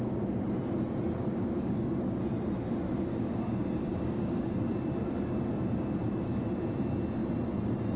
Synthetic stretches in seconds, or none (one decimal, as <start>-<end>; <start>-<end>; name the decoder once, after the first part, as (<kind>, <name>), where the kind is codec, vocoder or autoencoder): 1.3-2.2 (codec, DAC); 3.1-4.7